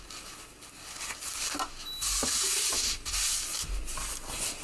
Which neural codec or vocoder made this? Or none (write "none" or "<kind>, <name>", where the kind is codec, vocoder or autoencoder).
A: none